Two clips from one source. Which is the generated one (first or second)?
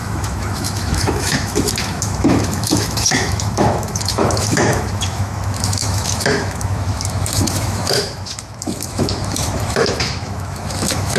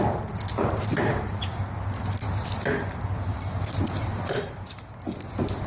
first